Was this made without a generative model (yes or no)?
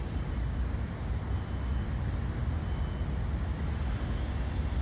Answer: yes